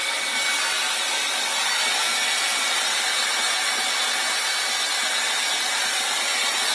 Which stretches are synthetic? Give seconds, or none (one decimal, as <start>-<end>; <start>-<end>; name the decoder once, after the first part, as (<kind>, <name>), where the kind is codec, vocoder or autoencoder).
none

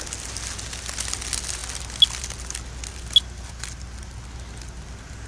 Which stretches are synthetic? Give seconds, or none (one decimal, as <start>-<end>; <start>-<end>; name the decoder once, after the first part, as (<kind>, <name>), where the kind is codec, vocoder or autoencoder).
none

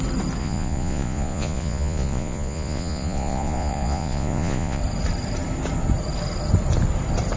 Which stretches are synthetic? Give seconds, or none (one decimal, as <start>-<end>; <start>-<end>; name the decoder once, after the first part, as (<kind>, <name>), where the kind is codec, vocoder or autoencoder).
0.4-4.8 (vocoder, Vocos)

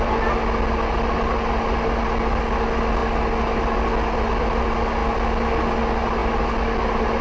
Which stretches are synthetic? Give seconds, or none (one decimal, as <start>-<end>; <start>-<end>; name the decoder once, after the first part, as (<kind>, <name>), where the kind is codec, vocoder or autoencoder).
none

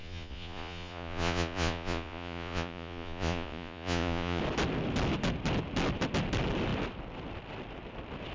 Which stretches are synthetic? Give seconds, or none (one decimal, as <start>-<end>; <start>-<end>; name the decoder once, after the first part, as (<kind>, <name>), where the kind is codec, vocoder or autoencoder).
0.0-4.4 (vocoder, Vocos)